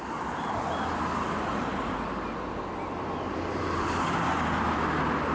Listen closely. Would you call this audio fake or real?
real